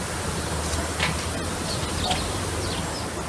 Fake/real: real